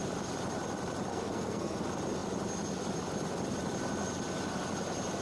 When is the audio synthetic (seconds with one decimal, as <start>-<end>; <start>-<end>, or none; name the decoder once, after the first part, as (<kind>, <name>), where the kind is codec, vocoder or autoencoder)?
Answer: 1.1-1.8 (codec, SNAC)

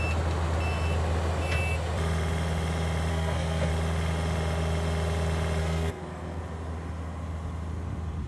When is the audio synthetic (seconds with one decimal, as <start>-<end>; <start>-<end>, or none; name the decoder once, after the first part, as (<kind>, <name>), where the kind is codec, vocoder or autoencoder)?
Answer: 3.1-3.7 (codec, SNAC); 5.6-6.4

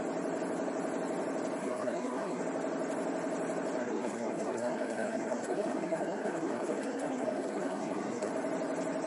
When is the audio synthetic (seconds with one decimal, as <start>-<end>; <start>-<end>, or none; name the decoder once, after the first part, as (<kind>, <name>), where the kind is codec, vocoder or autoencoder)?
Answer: 1.6-2.4 (codec, SNAC); 3.8-8.3

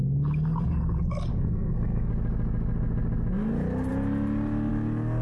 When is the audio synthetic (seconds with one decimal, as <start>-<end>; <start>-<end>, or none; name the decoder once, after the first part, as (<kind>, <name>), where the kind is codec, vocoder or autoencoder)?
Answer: 1.3-2.1 (codec, SNAC)

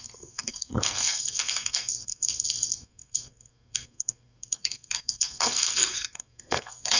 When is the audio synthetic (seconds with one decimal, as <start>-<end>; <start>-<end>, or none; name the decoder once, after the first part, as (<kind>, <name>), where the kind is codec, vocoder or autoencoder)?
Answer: 0.0-7.0 (codec, SNAC)

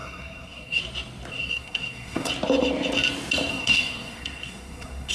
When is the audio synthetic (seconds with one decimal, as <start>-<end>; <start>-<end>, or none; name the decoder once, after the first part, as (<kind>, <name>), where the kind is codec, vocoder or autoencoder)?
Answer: 0.0-0.8 (codec, SNAC); 1.3-2.3; 3.5-5.1

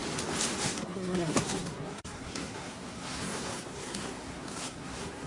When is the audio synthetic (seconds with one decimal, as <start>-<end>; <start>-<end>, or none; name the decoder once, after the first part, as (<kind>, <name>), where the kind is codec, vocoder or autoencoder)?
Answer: 0.6-5.3 (codec, SNAC)

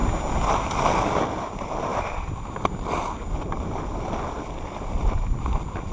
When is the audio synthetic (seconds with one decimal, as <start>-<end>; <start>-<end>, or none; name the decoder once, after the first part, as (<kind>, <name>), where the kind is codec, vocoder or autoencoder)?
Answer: none